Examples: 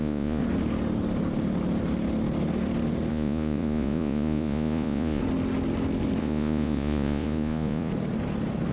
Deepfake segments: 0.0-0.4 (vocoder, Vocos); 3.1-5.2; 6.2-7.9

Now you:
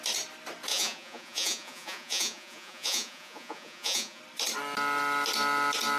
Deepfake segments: 0.7-4.2 (vocoder, Vocos)

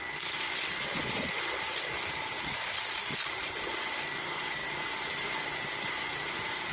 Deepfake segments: none

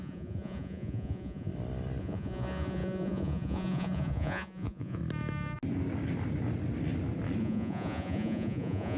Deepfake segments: 0.0-1.5 (vocoder, Vocos); 2.0-5.0; 7.4-9.0

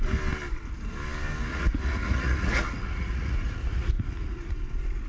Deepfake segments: 1.5-4.6 (vocoder, Vocos)

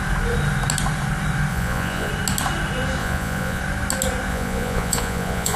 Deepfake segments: 1.5-2.1 (vocoder, Vocos); 3.0-3.6; 4.3-5.6